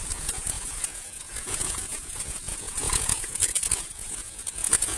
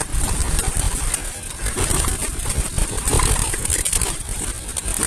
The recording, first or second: second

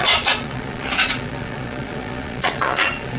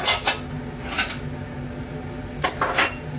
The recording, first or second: second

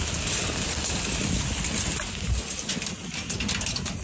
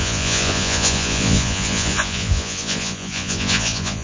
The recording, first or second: first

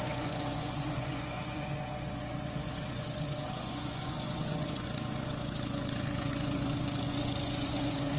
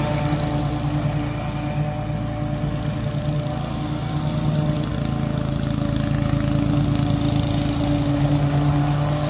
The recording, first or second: second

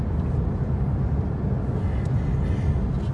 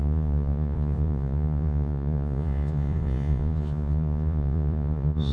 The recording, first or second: first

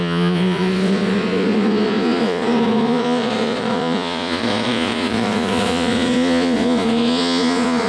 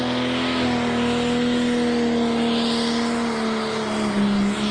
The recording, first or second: second